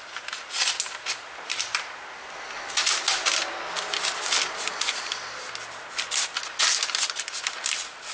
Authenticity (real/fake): real